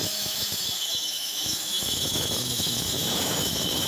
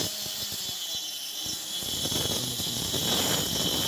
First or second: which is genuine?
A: second